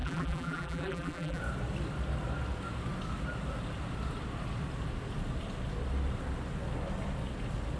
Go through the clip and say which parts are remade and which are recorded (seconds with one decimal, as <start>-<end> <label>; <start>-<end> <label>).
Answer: 0.0-1.4 remade; 1.4-7.8 recorded